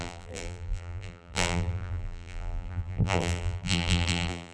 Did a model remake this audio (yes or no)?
yes